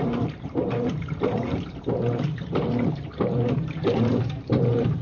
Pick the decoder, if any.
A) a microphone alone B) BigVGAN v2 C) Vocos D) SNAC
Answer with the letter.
B